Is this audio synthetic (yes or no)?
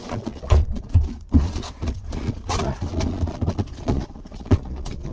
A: yes